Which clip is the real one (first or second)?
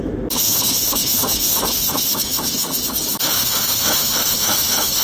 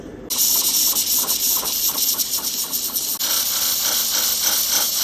second